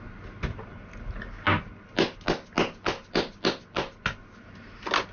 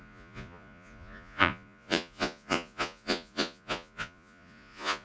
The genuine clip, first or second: first